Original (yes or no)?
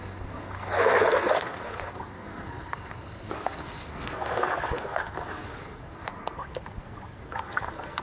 no